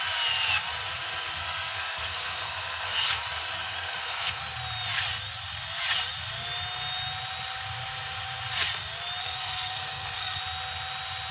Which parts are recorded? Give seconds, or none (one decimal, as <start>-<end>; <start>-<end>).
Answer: 0.0-1.4; 3.2-3.6; 4.4-9.2; 10.4-11.3